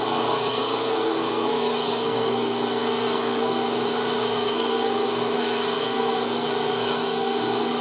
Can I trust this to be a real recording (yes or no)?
no